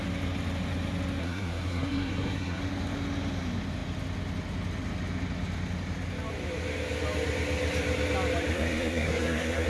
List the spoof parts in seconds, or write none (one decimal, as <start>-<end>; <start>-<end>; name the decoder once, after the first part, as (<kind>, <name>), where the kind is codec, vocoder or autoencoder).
1.2-2.6 (codec, SNAC); 8.5-9.7